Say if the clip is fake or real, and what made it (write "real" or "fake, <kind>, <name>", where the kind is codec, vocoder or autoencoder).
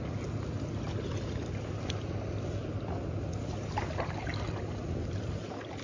real